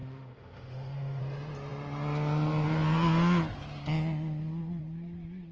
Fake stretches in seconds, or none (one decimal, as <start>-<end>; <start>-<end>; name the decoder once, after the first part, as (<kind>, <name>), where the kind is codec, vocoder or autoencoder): 0.0-1.2 (autoencoder, DAC-VAE)